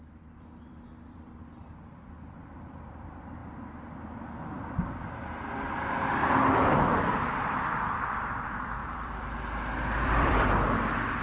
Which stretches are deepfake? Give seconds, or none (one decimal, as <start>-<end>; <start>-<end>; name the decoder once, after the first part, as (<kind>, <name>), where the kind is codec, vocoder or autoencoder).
0.0-3.4 (vocoder, BigVGAN v2); 7.3-11.2